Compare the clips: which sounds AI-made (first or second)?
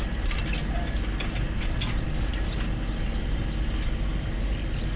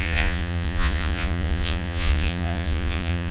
second